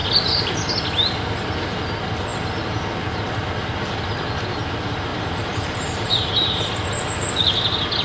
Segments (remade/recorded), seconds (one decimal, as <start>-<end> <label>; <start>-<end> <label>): 0.0-0.6 remade; 0.6-5.1 recorded; 5.1-6.3 remade; 6.3-8.0 recorded